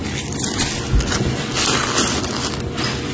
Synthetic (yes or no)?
no